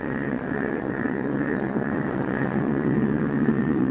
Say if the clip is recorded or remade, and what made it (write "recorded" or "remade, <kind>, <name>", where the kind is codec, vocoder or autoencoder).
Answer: remade, vocoder, WaveNeXt